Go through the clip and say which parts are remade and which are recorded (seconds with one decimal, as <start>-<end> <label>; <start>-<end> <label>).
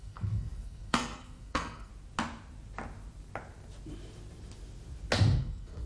0.0-1.9 remade; 1.9-5.4 recorded; 5.4-5.9 remade